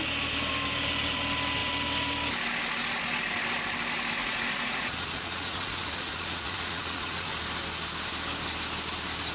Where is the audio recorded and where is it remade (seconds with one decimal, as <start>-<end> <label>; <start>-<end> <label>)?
0.0-4.2 recorded; 4.2-7.3 remade; 7.3-9.3 recorded